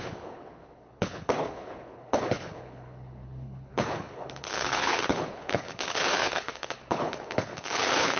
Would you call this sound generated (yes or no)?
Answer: yes